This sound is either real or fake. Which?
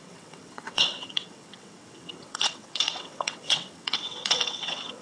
fake